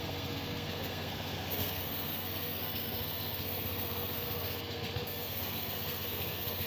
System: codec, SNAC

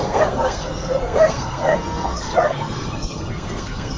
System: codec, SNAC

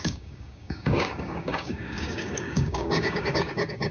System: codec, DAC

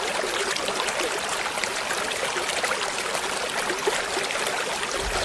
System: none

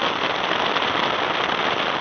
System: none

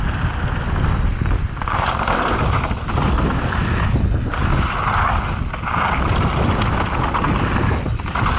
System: none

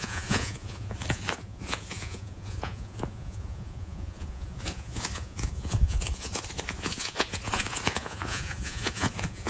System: vocoder, Vocos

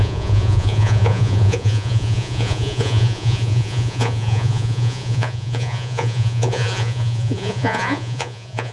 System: vocoder, Vocos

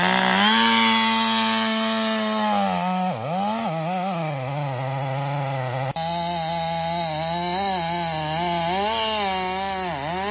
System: none